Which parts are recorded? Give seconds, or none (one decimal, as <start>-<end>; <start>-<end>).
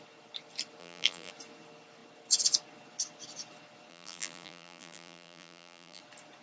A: 0.0-0.8; 1.3-3.9; 6.0-6.4